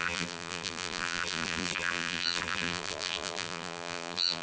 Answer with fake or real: fake